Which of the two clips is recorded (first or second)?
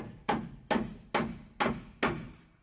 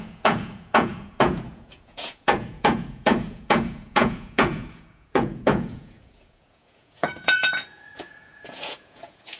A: first